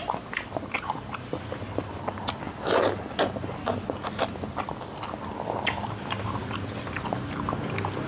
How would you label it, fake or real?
real